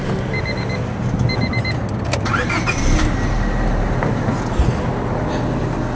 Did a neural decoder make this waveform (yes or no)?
no